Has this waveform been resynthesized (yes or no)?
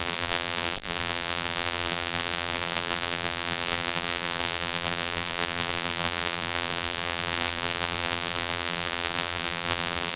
yes